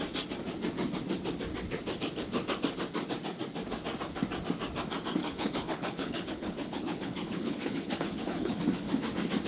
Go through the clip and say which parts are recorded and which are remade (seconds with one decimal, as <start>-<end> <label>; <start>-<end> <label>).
0.0-5.2 recorded; 5.2-8.6 remade; 8.6-9.5 recorded